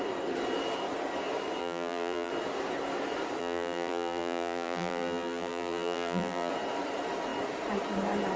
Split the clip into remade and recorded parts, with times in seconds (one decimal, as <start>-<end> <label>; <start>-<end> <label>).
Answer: 0.0-1.6 recorded; 1.6-2.3 remade; 2.3-3.4 recorded; 3.4-6.5 remade; 6.5-8.4 recorded